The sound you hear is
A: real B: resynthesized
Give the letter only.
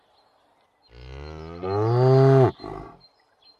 A